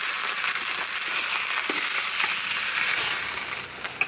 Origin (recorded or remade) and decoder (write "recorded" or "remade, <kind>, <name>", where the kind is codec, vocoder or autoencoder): recorded